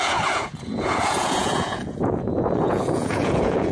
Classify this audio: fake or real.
fake